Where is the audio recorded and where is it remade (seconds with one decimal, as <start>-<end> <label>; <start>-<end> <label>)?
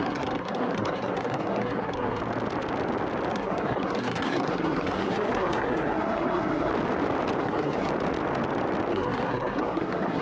0.0-2.2 remade; 2.2-3.3 recorded; 3.3-6.7 remade; 6.7-7.4 recorded; 7.4-7.9 remade; 7.9-8.9 recorded; 8.9-10.2 remade